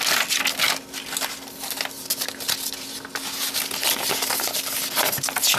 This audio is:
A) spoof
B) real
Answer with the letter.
B